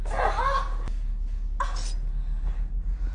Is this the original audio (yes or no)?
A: yes